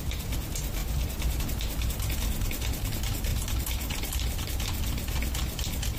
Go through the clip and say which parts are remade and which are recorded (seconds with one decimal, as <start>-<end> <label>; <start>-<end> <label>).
0.0-0.8 recorded; 0.8-1.4 remade; 1.4-3.3 recorded; 3.3-4.4 remade; 4.4-6.0 recorded